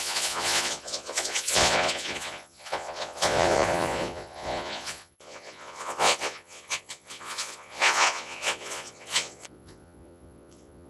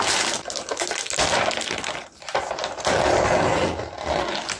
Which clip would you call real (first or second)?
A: second